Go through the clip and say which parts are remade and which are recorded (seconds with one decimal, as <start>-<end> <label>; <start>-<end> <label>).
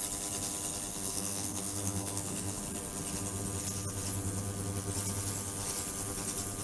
0.0-0.9 recorded; 0.9-2.6 remade; 2.6-6.6 recorded